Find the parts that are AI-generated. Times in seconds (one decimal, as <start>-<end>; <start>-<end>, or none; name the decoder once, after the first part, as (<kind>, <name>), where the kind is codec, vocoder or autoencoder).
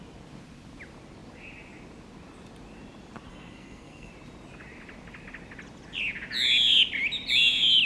3.3-4.1 (codec, SNAC)